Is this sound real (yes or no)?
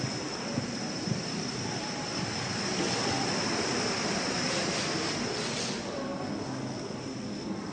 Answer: yes